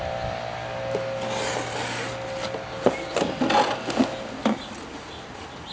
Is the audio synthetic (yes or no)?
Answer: no